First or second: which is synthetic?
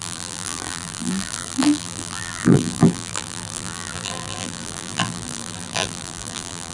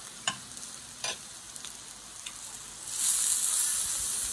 first